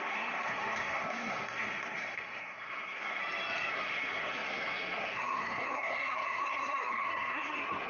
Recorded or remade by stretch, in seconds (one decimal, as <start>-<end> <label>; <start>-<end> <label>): 0.0-3.2 remade; 3.2-3.7 recorded; 3.7-7.9 remade